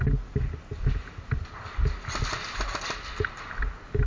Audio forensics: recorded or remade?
recorded